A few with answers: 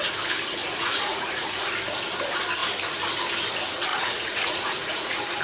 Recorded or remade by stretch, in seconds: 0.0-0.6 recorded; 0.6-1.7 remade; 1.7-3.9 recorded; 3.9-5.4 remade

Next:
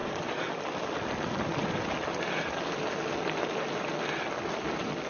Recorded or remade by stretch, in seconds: 0.0-5.1 recorded